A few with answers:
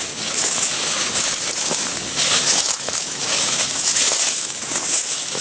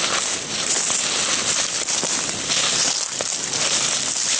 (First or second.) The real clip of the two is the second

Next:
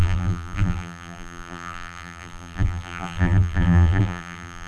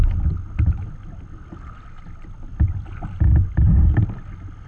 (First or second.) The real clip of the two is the second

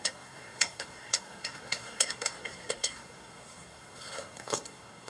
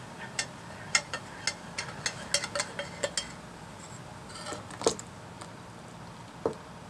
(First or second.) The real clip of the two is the second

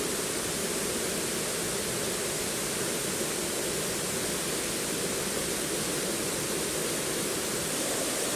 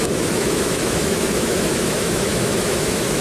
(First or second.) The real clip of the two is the first